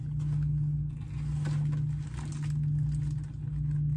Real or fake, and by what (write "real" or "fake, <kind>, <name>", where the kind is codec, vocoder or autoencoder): real